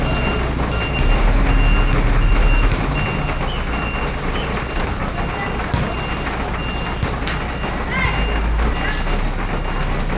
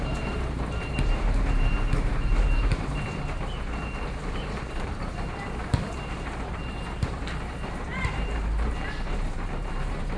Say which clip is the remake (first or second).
second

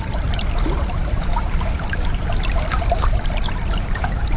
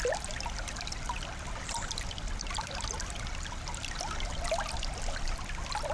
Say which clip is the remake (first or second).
first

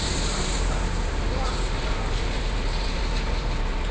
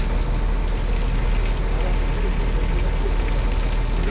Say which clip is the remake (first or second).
first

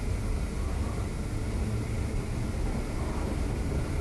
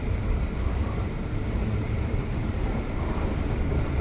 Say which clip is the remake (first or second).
second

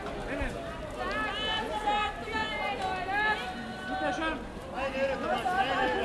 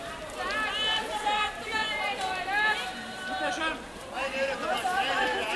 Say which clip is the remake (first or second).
second